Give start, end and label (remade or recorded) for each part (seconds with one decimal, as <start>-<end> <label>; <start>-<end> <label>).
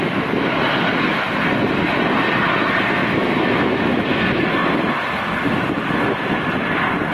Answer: 0.0-3.0 recorded; 3.0-4.4 remade; 4.4-7.1 recorded